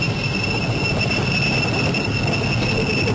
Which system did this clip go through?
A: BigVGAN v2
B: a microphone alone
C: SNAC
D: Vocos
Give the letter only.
B